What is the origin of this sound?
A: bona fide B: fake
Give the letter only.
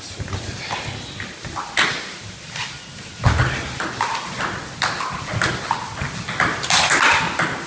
A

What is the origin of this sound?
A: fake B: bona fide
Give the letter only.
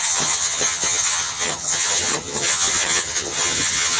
A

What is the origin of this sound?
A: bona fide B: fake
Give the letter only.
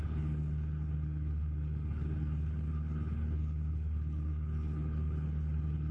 B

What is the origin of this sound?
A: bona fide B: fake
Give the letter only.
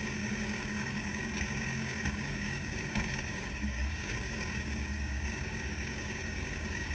B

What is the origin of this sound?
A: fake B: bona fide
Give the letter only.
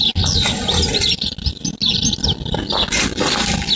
B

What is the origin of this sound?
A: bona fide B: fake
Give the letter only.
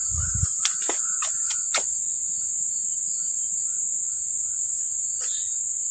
A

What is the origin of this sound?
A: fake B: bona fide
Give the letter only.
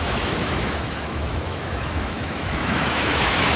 A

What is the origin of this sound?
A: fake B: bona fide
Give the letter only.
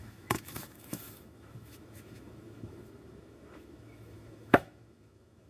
A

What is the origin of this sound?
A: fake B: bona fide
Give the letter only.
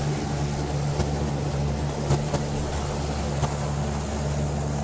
B